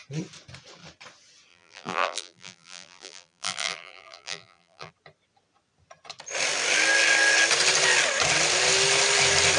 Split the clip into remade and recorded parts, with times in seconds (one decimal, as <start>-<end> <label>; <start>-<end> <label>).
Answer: 0.0-1.5 recorded; 1.5-4.9 remade; 4.9-9.6 recorded

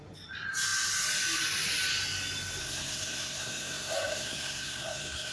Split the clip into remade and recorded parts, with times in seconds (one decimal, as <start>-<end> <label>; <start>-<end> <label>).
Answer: 0.0-2.6 recorded; 2.6-5.3 remade

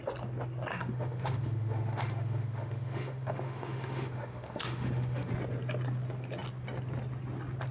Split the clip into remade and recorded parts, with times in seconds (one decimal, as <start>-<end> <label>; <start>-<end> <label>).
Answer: 0.0-0.7 recorded; 0.7-5.3 remade; 5.3-7.7 recorded

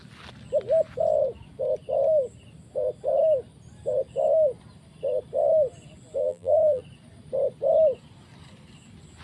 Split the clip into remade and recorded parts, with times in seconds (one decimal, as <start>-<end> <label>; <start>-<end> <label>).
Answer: 0.0-6.2 recorded; 6.2-6.8 remade; 6.8-9.2 recorded

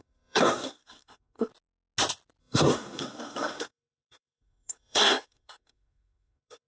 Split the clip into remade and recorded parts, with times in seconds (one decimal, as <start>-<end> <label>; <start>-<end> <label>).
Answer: 0.0-1.5 remade; 1.5-2.4 recorded; 2.4-6.7 remade

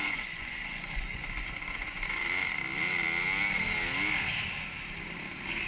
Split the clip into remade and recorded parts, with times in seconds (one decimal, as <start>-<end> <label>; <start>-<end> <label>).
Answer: 0.0-2.2 remade; 2.2-5.7 recorded